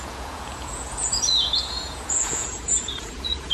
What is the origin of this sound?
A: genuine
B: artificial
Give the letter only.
B